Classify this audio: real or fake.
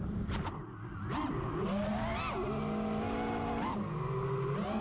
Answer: real